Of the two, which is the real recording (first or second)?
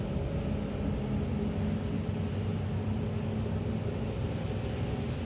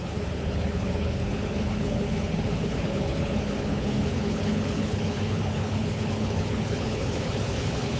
first